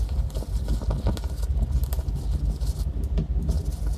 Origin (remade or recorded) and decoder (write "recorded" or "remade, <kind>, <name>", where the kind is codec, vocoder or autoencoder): recorded